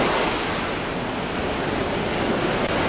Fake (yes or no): no